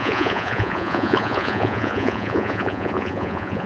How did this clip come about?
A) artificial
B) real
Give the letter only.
A